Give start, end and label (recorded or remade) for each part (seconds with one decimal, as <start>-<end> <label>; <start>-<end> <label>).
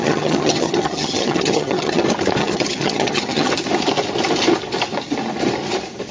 0.0-2.0 remade; 2.0-2.4 recorded; 2.4-3.5 remade; 3.5-6.1 recorded